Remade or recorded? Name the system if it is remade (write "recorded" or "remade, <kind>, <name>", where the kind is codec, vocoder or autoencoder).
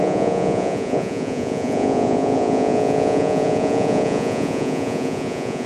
remade, vocoder, Vocos